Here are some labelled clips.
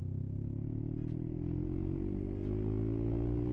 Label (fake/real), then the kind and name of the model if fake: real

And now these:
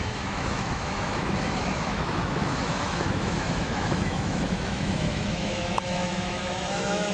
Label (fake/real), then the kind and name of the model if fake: fake, autoencoder, DAC-VAE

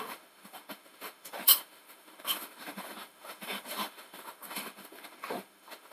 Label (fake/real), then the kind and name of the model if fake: fake, autoencoder, DAC-VAE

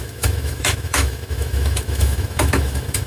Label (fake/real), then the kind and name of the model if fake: fake, autoencoder, DAC-VAE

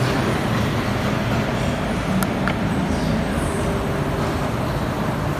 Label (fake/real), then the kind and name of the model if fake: real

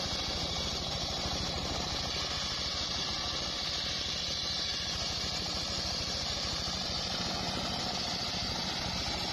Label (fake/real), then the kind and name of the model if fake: real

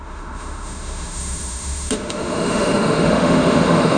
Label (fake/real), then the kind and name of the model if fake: fake, autoencoder, DAC-VAE